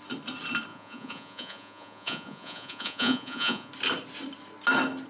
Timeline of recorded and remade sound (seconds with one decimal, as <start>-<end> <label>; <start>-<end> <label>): 0.0-0.7 recorded; 0.7-3.7 remade; 3.7-5.1 recorded